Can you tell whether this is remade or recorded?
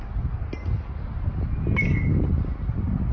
recorded